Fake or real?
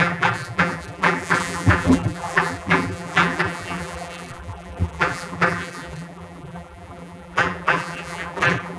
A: fake